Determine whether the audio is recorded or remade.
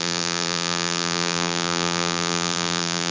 remade